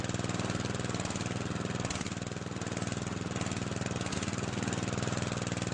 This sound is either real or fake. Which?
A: real